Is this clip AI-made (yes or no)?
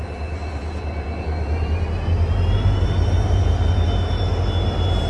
no